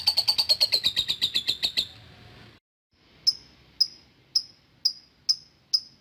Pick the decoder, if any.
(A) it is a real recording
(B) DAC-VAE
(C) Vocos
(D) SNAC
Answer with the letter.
A